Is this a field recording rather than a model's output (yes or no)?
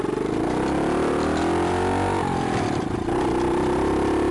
yes